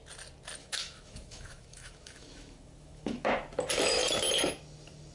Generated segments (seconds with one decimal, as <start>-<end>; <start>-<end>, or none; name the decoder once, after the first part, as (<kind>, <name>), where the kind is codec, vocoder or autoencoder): 0.6-3.3 (autoencoder, DAC-VAE)